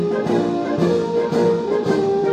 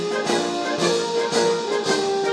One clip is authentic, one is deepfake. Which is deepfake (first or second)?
first